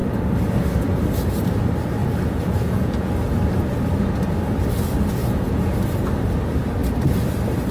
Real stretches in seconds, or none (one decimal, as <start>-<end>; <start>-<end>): 0.0-2.0; 3.1-5.2; 5.7-7.7

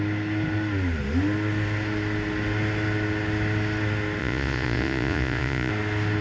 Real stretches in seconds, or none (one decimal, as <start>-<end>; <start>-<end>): 0.0-4.2; 5.7-6.2

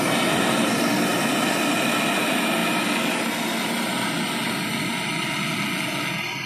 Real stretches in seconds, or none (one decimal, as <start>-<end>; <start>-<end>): 0.0-6.5

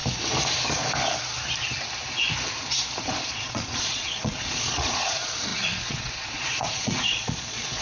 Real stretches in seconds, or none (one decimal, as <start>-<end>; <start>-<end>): 0.0-3.0

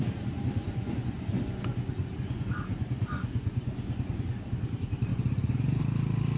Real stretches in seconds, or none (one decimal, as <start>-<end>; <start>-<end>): 0.0-0.6; 4.4-5.1; 5.8-6.4

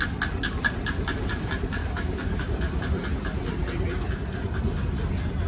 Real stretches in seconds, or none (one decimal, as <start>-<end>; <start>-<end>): 0.0-5.5

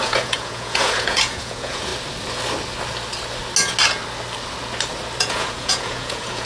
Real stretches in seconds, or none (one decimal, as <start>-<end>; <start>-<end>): 1.9-5.2

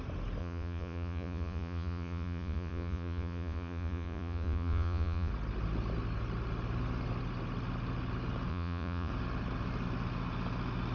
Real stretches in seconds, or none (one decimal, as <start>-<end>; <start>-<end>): 0.0-0.4; 5.3-8.5; 9.1-10.9